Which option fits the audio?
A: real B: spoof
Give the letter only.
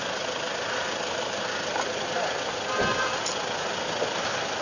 A